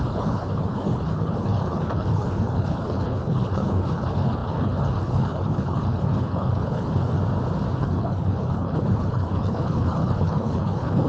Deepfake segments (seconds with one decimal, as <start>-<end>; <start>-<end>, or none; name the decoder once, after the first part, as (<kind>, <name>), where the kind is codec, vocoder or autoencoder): 0.0-7.2 (codec, HILCodec); 7.8-11.1